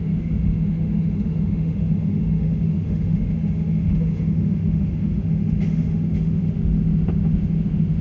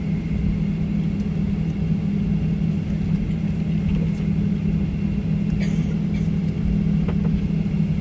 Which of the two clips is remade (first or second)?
first